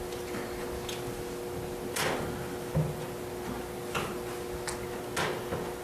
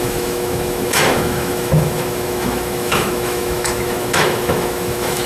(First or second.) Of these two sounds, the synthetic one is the second